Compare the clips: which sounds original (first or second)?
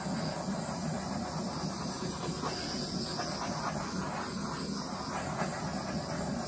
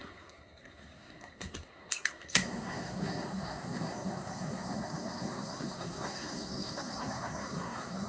first